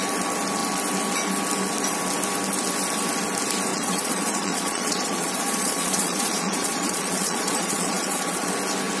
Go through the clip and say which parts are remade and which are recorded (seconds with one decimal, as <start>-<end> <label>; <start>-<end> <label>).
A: 0.0-3.7 recorded; 3.7-8.5 remade; 8.5-9.0 recorded